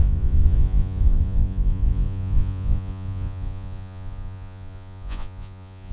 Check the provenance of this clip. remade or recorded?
remade